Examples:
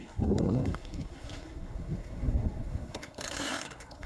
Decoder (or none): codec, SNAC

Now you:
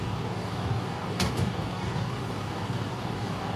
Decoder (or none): codec, DAC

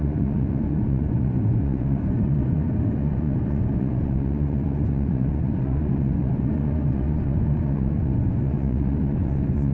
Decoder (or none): vocoder, Vocos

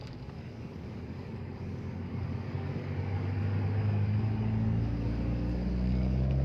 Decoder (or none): codec, DAC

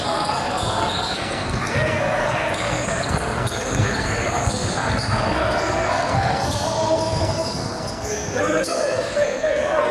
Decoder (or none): codec, SNAC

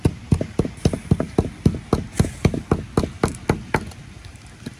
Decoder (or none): none